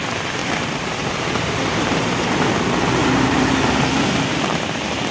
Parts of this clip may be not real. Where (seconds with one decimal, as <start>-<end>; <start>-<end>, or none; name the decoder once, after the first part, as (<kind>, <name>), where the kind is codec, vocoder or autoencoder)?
0.4-2.5 (vocoder, BigVGAN v2); 3.0-4.2